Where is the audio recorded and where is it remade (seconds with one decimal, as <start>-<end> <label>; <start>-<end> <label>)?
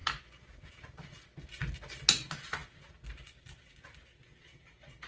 0.0-5.1 recorded